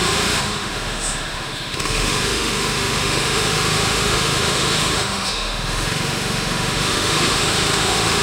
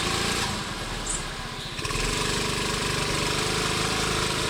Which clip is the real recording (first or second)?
second